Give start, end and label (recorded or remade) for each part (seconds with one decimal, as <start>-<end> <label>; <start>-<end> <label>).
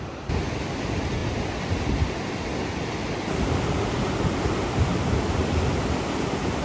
0.0-6.6 recorded